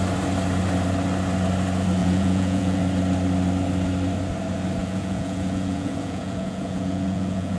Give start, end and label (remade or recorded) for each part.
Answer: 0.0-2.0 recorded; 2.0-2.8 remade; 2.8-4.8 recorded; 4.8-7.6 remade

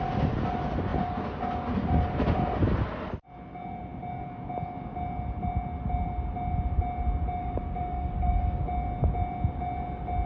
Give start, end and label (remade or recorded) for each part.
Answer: 0.0-7.4 recorded; 7.4-8.6 remade; 8.6-10.3 recorded